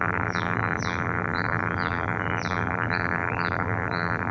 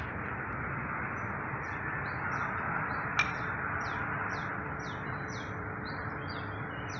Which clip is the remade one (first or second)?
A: first